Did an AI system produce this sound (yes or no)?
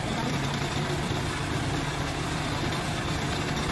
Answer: yes